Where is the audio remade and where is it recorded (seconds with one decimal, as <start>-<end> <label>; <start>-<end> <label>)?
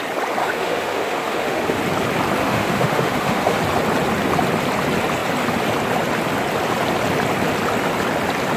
0.0-0.4 recorded; 0.4-1.8 remade; 1.8-2.4 recorded; 2.4-3.6 remade; 3.6-8.6 recorded